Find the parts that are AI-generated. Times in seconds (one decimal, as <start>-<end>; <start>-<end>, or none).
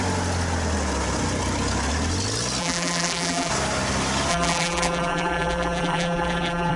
2.6-3.5; 4.3-6.8